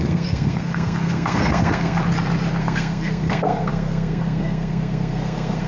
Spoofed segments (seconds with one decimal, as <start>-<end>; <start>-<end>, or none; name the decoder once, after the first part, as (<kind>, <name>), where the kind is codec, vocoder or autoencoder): 0.0-2.0 (codec, SNAC); 2.6-5.7

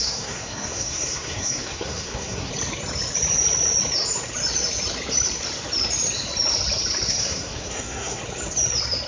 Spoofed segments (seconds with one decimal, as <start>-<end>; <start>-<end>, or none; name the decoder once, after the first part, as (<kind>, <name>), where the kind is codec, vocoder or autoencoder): 0.0-2.5 (codec, SNAC); 7.1-8.2

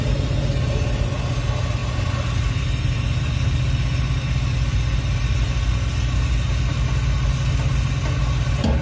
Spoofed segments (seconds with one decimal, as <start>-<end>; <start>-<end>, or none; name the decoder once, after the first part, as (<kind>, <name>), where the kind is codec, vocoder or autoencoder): none

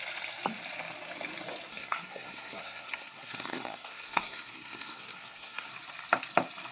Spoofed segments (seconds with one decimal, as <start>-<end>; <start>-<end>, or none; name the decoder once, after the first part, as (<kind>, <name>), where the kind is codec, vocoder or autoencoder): 1.7-5.7 (codec, SNAC)

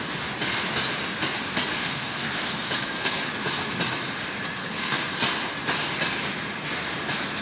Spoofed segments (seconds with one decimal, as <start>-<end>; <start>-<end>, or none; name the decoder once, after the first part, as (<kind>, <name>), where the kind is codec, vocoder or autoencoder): 1.7-3.3 (codec, SNAC); 4.6-5.2

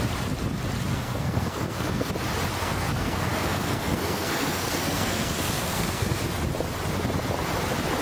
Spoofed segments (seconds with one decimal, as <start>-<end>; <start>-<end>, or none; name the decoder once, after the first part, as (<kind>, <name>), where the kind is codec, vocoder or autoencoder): 0.9-2.1 (codec, SNAC); 2.6-6.2